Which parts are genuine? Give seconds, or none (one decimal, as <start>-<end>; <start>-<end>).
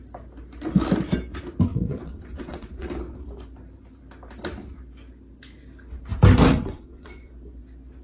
0.0-1.7; 2.9-6.5; 7.3-8.0